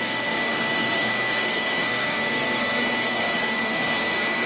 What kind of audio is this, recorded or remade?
remade